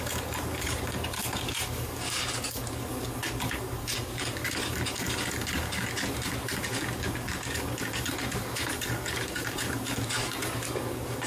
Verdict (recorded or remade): remade